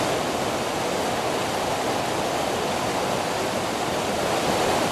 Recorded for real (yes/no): no